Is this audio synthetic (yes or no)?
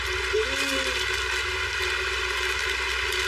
no